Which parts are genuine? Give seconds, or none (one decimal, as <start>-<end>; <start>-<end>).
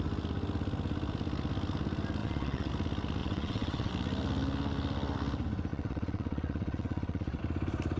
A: 0.0-2.2; 2.7-3.2; 3.9-5.7; 7.4-8.0